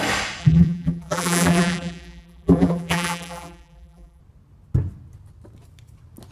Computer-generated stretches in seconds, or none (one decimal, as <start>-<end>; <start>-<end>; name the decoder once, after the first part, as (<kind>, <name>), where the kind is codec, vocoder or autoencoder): 0.4-4.2 (vocoder, BigVGAN v2)